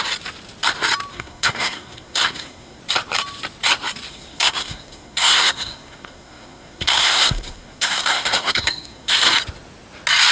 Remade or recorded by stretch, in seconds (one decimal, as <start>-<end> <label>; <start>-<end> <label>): 0.0-1.1 recorded; 1.1-2.8 remade; 2.8-4.1 recorded; 4.1-9.1 remade; 9.1-10.3 recorded